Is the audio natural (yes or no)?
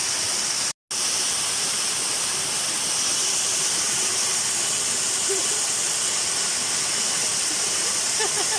yes